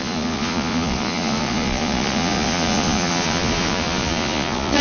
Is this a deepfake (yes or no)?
yes